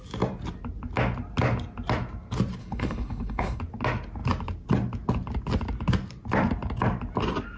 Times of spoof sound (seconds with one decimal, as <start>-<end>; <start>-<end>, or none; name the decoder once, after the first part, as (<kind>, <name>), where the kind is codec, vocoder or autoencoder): 2.6-3.6 (codec, HILCodec)